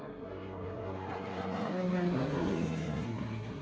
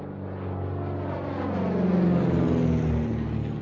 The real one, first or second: second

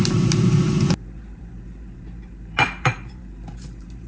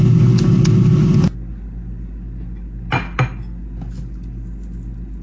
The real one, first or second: second